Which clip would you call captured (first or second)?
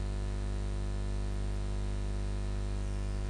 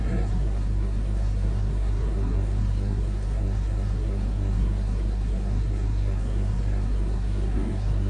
first